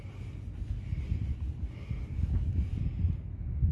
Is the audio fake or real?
real